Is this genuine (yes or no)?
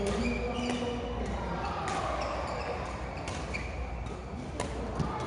yes